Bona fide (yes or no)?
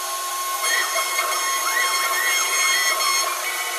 yes